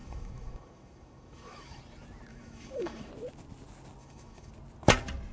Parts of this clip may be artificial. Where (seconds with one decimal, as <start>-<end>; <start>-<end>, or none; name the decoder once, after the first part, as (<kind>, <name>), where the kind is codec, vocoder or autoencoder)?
0.0-1.8 (autoencoder, DAC-VAE); 2.3-3.1; 4.0-4.5